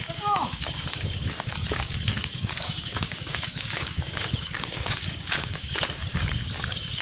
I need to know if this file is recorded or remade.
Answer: remade